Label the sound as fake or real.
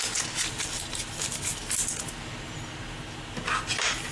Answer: real